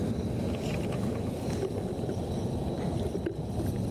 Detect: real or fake real